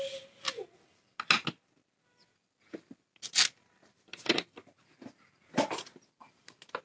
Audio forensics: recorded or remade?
recorded